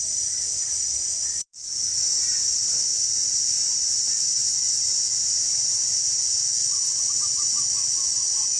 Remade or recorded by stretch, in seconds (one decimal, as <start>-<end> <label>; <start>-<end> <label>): 0.0-1.3 recorded; 1.3-1.8 remade; 1.8-2.9 recorded; 2.9-4.4 remade; 4.4-6.6 recorded; 6.6-8.2 remade; 8.2-8.6 recorded